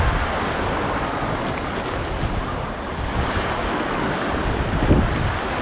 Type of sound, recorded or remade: recorded